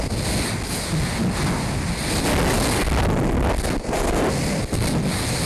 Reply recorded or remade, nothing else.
recorded